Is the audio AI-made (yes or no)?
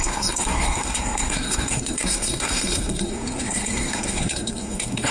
yes